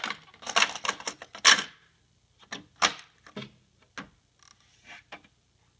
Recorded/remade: recorded